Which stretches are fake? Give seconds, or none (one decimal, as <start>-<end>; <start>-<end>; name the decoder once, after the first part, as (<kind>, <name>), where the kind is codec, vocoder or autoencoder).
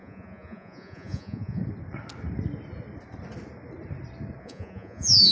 0.0-1.6 (vocoder, Vocos); 4.4-5.3